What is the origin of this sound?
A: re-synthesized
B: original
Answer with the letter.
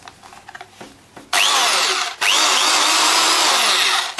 B